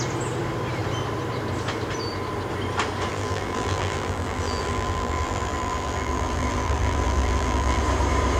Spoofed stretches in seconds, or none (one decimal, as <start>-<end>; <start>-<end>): 3.1-7.8